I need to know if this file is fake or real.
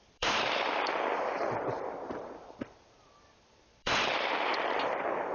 fake